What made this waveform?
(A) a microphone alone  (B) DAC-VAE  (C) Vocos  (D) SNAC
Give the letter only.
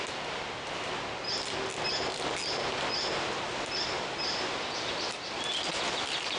A